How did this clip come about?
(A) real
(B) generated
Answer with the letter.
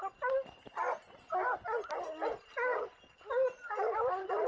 A